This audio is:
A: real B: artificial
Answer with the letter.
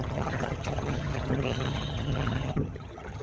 B